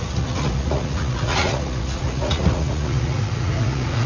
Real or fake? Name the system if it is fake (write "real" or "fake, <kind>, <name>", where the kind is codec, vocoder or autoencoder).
fake, vocoder, Vocos